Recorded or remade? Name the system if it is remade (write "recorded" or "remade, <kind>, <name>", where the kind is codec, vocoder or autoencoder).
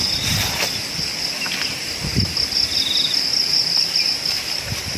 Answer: recorded